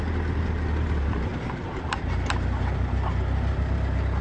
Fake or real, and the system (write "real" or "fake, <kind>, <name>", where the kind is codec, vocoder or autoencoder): real